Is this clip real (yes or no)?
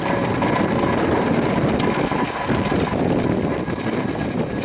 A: yes